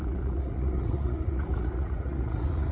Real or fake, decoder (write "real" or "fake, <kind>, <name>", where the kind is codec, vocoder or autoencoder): fake, vocoder, Vocos